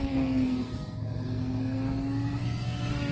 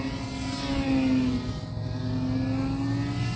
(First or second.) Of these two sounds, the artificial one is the first